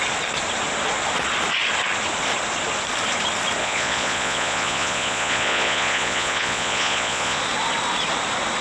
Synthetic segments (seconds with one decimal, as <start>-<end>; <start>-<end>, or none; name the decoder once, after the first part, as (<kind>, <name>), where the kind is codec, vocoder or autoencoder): 3.6-7.4 (vocoder, Vocos)